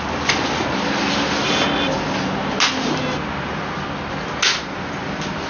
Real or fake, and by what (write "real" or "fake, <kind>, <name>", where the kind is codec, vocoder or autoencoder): real